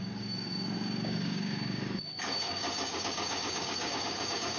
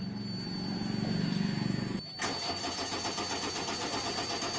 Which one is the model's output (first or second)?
first